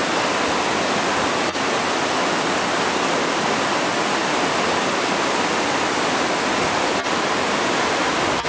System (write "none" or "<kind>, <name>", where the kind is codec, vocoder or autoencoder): none